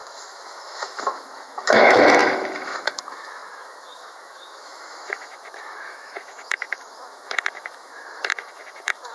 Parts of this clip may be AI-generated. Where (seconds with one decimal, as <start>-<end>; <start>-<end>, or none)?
0.0-9.1